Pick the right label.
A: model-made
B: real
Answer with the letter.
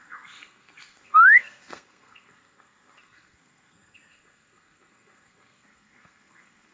A